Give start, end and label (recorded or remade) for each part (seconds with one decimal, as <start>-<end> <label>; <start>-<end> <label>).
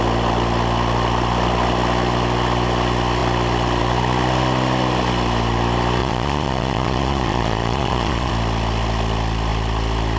0.0-6.0 recorded; 6.0-8.3 remade; 8.3-10.2 recorded